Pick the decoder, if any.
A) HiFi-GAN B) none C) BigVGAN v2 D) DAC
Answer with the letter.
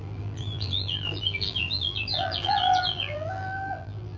C